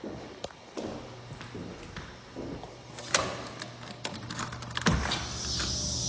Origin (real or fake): real